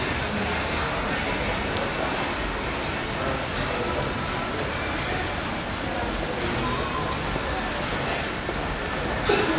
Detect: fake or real real